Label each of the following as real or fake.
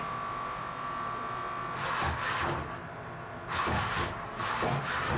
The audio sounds real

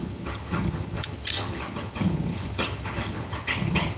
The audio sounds fake